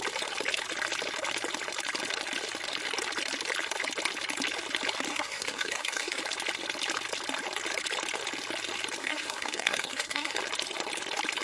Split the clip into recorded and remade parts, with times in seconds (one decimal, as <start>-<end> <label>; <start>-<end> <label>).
0.0-5.1 recorded; 5.1-6.2 remade; 6.2-9.0 recorded; 9.0-10.4 remade; 10.4-11.4 recorded